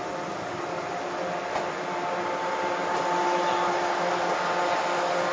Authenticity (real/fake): real